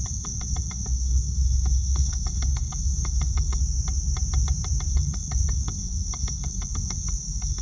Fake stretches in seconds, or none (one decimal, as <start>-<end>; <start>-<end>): 0.0-3.6; 4.9-7.6